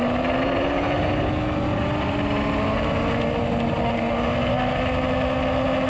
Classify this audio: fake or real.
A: real